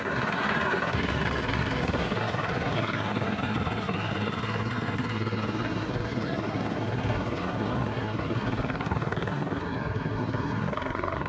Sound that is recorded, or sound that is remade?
remade